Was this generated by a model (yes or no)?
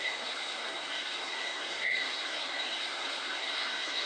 yes